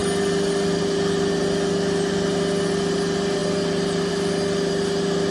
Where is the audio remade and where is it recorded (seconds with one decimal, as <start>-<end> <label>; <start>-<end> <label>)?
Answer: 0.0-5.3 recorded